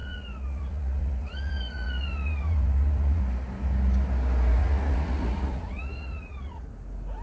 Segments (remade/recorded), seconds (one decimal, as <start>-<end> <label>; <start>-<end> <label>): 0.0-3.2 remade; 3.2-4.6 recorded; 4.6-6.7 remade; 6.7-7.2 recorded